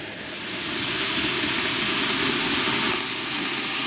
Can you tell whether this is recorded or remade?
recorded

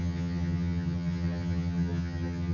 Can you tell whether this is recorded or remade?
remade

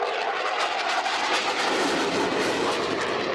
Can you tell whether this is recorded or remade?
recorded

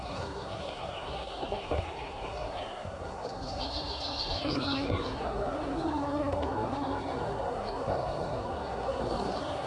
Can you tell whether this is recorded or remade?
remade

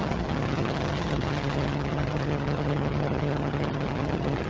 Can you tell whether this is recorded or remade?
remade